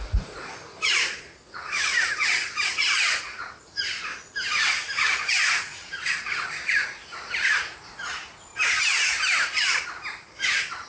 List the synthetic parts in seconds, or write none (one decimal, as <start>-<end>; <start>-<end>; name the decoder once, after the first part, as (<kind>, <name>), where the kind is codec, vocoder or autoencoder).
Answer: 0.0-4.1 (vocoder, Vocos); 4.7-8.5